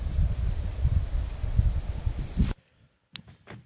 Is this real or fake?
real